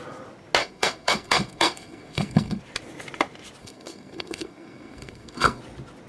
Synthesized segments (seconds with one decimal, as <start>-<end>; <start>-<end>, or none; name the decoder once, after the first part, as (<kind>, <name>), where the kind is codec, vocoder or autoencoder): 0.6-2.6 (codec, SNAC); 3.6-5.6